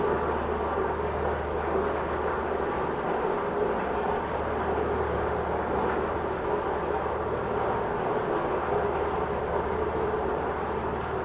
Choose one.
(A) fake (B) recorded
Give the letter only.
B